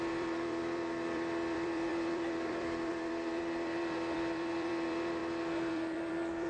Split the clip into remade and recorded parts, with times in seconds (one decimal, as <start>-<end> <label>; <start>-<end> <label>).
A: 0.0-5.2 remade; 5.2-5.7 recorded; 5.7-6.5 remade